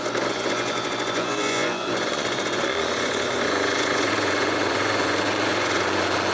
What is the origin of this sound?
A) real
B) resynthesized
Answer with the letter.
B